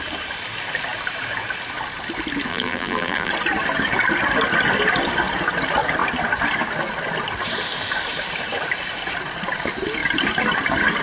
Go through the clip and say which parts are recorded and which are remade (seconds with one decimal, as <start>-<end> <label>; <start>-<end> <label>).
0.0-2.5 recorded; 2.5-3.3 remade; 3.3-11.0 recorded